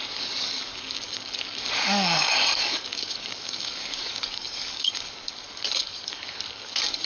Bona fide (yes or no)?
no